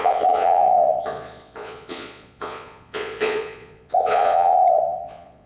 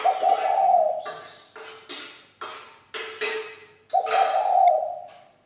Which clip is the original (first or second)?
second